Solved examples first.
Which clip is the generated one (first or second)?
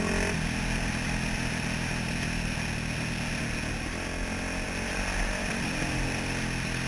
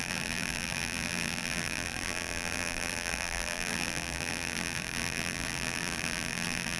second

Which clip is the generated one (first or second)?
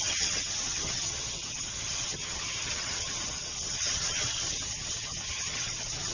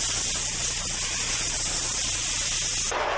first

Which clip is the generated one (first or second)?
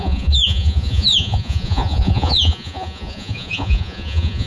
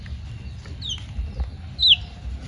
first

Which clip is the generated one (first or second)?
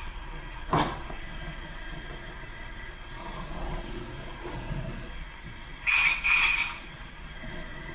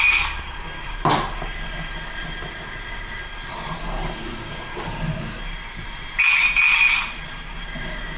first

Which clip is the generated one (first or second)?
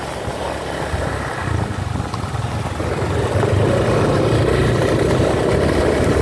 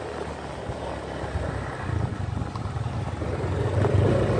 first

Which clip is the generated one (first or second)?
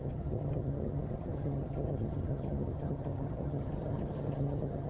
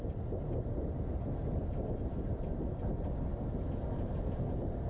first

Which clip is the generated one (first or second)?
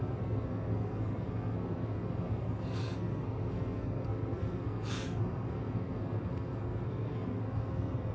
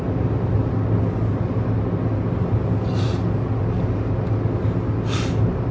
first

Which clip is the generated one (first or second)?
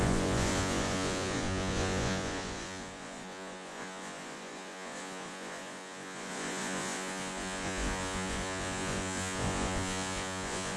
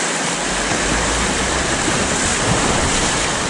first